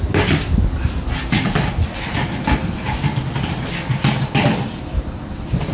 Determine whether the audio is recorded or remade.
recorded